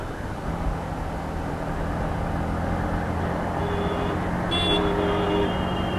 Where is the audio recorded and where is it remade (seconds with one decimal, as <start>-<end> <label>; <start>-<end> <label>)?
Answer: 0.0-6.0 recorded